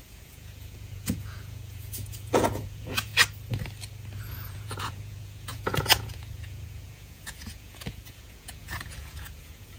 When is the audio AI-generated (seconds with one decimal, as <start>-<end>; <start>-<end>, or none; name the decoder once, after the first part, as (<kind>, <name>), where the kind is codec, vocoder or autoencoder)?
0.0-3.1 (vocoder, Vocos); 4.2-9.8